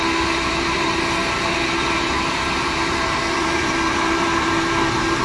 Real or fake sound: fake